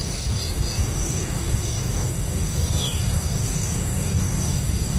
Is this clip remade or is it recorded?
remade